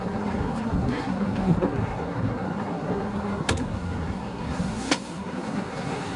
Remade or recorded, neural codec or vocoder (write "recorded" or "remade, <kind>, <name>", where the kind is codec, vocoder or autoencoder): remade, codec, SNAC